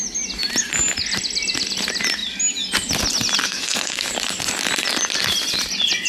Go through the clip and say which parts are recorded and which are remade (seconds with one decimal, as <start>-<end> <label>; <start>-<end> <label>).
0.0-3.4 recorded; 3.4-4.1 remade; 4.1-6.1 recorded